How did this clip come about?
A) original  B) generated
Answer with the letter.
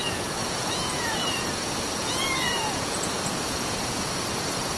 B